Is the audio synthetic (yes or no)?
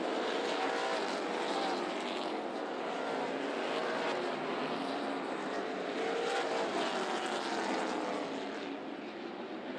no